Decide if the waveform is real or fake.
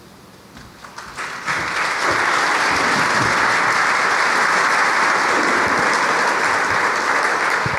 real